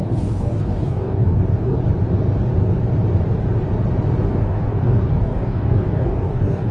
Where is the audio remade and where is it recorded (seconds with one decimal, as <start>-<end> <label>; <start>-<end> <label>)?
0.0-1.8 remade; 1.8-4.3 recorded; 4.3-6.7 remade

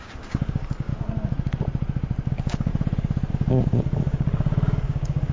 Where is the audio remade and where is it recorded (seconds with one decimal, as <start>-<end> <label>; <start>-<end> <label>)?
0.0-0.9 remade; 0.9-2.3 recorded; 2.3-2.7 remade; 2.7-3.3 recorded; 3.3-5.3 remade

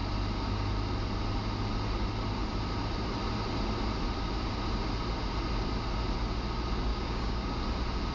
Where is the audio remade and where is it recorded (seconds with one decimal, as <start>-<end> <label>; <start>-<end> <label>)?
0.0-6.9 recorded; 6.9-7.6 remade; 7.6-8.1 recorded

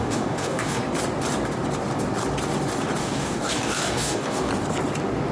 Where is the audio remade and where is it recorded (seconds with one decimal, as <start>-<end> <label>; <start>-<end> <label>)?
0.0-0.8 remade; 0.8-3.0 recorded; 3.0-4.5 remade; 4.5-5.3 recorded